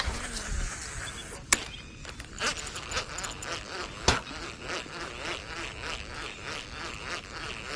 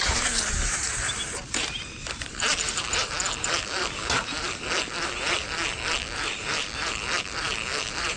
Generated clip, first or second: second